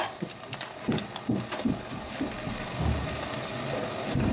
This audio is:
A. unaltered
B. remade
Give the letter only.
A